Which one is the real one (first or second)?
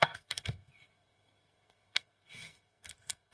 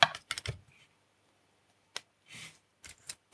second